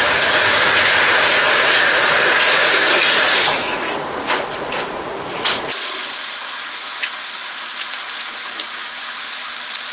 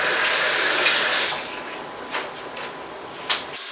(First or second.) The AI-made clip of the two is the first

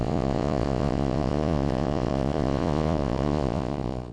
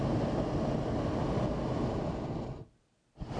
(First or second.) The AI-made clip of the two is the first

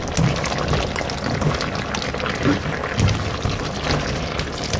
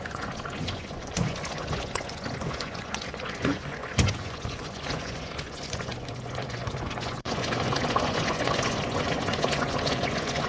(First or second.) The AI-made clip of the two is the second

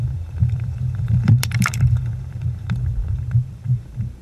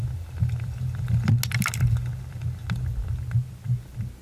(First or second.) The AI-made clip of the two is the first